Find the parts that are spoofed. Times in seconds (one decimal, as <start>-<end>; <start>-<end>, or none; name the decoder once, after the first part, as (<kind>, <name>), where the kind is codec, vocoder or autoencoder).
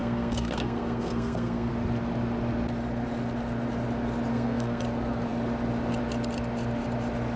0.0-1.7 (codec, SNAC); 4.3-4.8